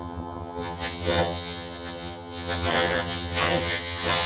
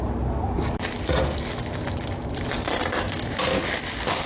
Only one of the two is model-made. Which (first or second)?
first